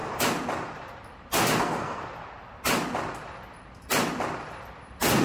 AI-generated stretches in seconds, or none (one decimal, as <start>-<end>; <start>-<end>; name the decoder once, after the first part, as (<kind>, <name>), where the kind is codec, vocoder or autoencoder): 1.6-2.0 (codec, SNAC)